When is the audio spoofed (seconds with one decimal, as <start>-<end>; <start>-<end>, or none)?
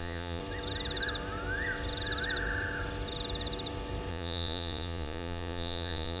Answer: 0.0-0.4; 4.1-6.2